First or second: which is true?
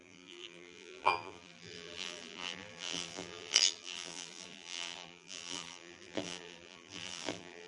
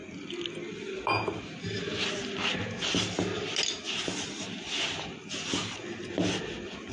second